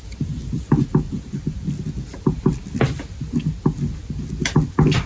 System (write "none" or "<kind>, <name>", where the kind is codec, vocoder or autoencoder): none